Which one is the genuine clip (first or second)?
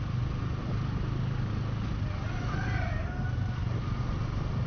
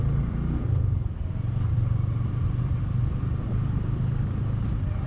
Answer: first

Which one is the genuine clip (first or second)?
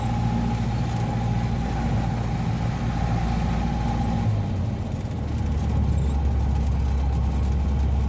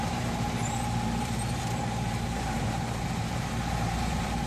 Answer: first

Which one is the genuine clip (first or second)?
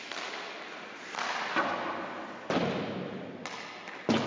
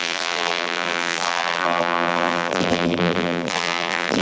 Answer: first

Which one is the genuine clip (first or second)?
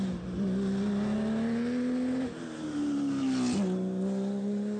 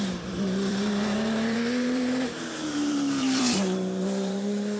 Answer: first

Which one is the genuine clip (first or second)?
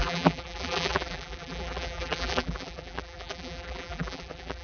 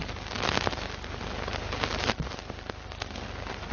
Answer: second